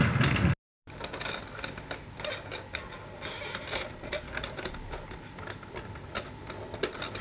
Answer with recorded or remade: recorded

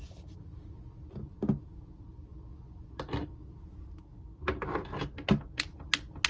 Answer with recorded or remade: recorded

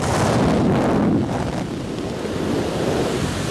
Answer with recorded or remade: recorded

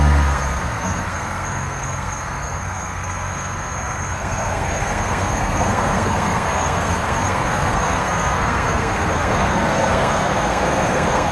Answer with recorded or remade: remade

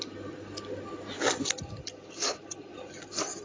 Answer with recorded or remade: recorded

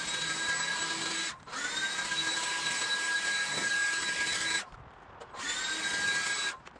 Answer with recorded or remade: recorded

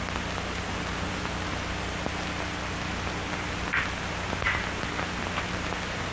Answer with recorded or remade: recorded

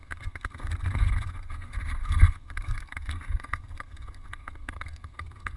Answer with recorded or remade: remade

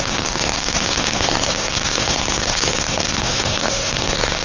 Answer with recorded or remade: remade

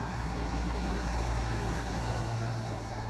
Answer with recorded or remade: remade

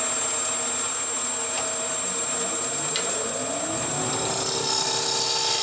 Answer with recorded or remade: recorded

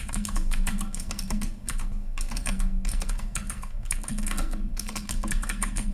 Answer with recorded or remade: remade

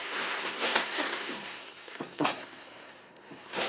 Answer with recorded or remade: remade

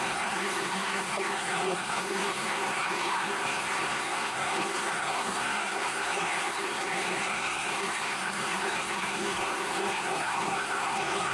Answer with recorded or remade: remade